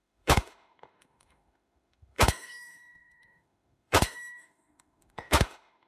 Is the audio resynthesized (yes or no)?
yes